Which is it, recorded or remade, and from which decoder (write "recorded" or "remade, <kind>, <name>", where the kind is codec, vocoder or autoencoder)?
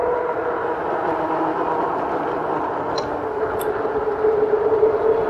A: recorded